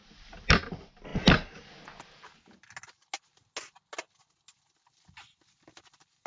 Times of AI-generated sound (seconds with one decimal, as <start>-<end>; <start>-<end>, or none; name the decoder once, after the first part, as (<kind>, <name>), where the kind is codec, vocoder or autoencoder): none